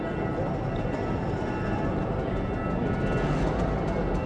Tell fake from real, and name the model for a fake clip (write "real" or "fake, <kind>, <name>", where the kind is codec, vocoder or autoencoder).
real